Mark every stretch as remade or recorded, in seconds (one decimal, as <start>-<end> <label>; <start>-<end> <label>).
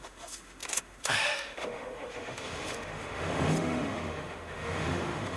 0.0-5.4 remade